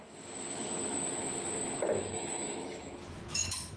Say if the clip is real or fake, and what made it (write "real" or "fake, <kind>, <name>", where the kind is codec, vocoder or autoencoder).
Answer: fake, autoencoder, DAC-VAE